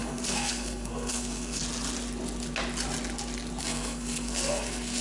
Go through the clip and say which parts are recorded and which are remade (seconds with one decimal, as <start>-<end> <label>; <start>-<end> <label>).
0.0-1.6 remade; 1.6-3.6 recorded; 3.6-5.0 remade